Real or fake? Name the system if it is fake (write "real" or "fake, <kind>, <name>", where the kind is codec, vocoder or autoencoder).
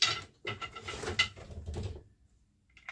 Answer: real